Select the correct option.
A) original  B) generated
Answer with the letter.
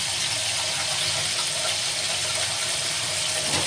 A